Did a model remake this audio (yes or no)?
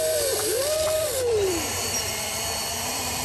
yes